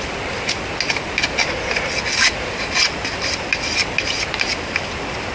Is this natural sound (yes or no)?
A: yes